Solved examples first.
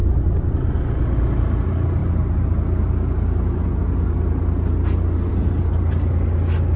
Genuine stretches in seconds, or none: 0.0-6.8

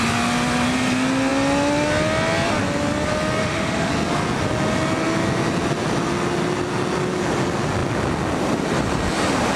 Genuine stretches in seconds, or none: 0.0-3.4; 3.9-9.6